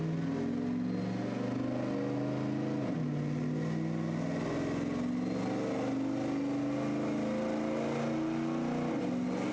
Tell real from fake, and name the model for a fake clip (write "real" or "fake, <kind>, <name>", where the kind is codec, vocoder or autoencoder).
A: real